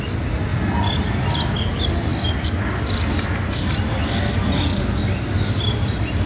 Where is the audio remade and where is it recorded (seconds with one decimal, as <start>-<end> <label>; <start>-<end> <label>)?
0.0-6.3 recorded